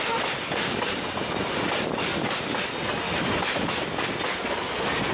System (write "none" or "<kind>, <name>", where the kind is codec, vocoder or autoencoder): none